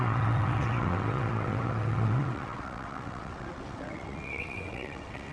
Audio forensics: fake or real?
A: fake